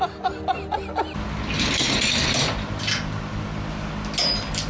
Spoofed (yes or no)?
no